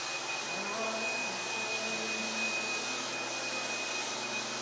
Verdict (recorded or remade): recorded